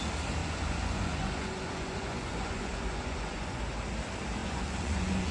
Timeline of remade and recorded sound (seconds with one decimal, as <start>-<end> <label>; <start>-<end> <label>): 0.0-0.4 recorded; 0.4-3.6 remade; 3.6-4.4 recorded; 4.4-5.3 remade